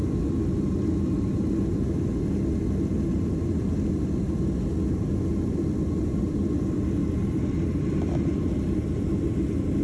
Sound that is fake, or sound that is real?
real